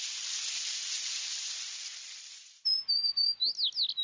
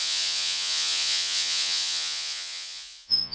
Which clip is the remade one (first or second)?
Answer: second